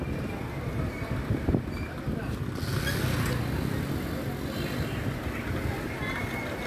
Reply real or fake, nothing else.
real